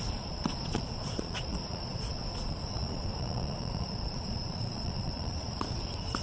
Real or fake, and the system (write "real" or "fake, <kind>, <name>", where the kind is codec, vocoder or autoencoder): fake, vocoder, Vocos